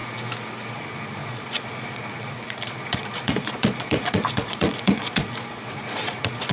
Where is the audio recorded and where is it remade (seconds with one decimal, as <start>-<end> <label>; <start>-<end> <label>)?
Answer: 0.0-0.7 recorded; 0.7-6.5 remade